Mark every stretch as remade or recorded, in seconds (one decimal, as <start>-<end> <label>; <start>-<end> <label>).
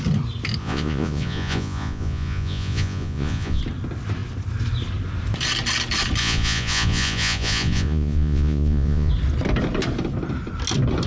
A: 0.0-0.6 recorded; 0.6-3.6 remade; 3.6-6.2 recorded; 6.2-9.1 remade; 9.1-11.1 recorded